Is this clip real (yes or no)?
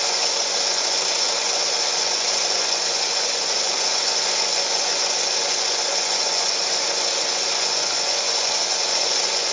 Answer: no